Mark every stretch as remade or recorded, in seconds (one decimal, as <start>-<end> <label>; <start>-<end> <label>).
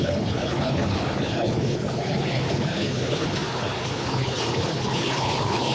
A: 0.0-5.7 remade